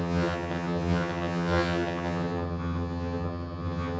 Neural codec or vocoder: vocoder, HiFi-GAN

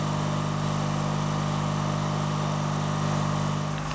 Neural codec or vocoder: none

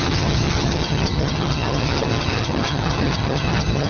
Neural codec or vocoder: vocoder, HiFi-GAN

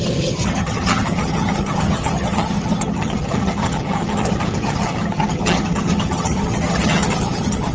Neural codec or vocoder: vocoder, HiFi-GAN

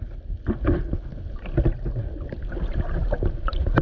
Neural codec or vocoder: none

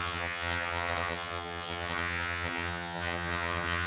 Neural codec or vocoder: vocoder, HiFi-GAN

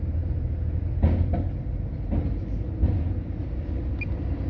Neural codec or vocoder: none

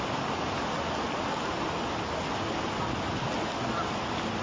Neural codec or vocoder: none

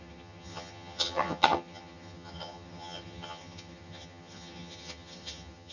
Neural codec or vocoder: vocoder, HiFi-GAN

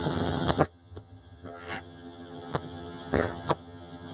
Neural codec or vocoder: vocoder, HiFi-GAN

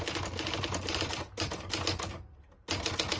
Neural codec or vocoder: none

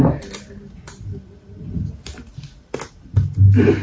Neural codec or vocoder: none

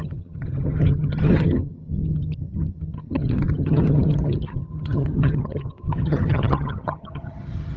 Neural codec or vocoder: vocoder, HiFi-GAN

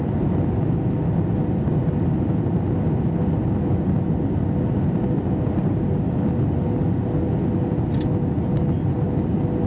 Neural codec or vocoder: none